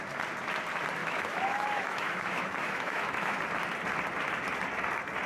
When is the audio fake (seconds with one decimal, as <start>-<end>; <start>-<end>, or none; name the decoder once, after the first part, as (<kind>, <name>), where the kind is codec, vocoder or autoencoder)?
1.0-3.4 (autoencoder, DAC-VAE)

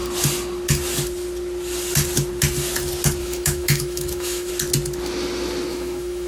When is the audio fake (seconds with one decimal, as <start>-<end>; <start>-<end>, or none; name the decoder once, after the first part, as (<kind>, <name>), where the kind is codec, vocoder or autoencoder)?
3.2-4.5 (autoencoder, DAC-VAE); 5.7-6.3